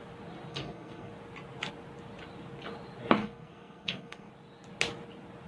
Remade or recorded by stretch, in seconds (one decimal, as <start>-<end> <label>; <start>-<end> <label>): 0.0-0.5 recorded; 0.5-1.1 remade; 1.1-3.2 recorded; 3.2-4.3 remade; 4.3-5.5 recorded